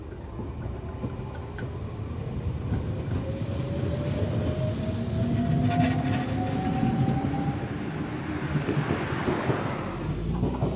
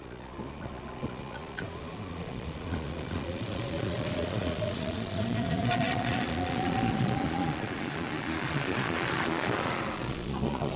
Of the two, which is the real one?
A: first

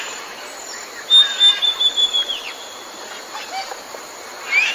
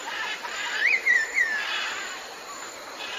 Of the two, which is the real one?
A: first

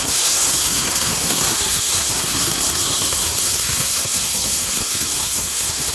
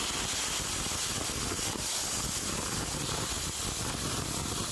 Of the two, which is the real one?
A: second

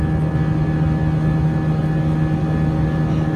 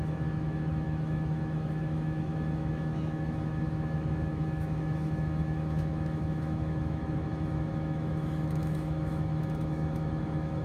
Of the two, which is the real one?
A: first